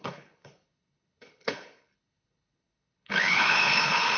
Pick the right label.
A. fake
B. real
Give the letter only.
A